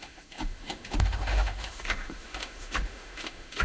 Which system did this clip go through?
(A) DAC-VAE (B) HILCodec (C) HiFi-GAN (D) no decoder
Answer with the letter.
A